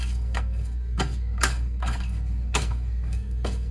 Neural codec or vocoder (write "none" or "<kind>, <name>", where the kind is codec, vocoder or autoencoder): codec, SNAC